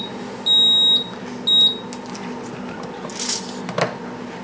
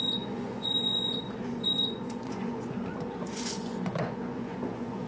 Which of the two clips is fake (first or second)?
second